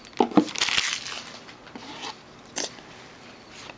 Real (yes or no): yes